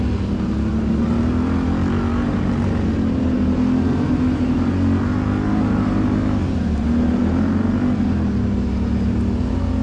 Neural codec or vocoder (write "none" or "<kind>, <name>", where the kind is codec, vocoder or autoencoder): none